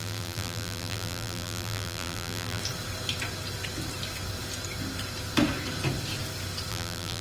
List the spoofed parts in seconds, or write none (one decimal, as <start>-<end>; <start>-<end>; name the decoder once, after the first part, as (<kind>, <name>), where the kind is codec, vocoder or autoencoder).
0.0-2.6 (vocoder, BigVGAN v2); 6.7-7.2